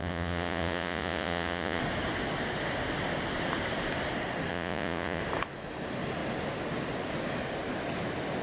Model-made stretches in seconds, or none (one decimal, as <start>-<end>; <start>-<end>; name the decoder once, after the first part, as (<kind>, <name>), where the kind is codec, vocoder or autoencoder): 0.0-1.8 (vocoder, Vocos); 4.5-5.2